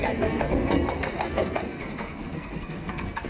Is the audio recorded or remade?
remade